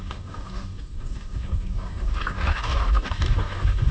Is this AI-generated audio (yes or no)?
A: yes